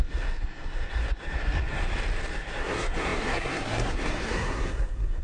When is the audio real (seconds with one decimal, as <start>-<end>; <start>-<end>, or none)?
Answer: 1.8-2.3